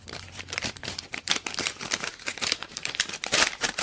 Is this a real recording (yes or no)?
no